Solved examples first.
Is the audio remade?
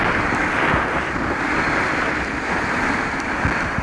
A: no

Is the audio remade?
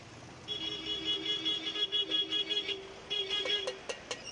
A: no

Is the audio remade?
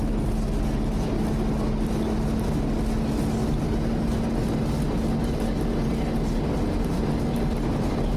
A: no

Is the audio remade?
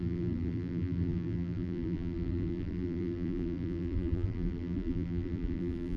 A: yes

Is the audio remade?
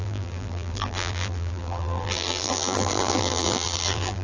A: yes